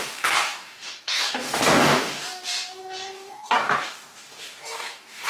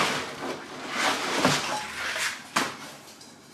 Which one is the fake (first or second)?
first